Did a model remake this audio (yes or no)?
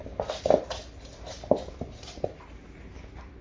no